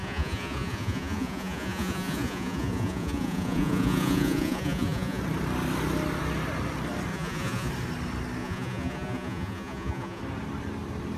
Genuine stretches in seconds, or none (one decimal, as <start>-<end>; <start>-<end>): 5.2-7.1; 7.7-8.4; 10.2-11.2